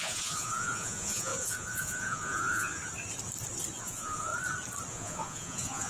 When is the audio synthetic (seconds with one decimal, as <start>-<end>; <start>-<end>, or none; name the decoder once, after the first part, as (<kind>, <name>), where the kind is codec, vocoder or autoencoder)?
0.0-2.8 (vocoder, Vocos); 3.8-4.3; 4.9-5.9